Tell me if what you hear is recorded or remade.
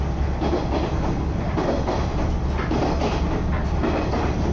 recorded